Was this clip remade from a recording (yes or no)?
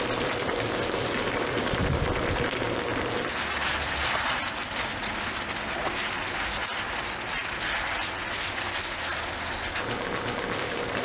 yes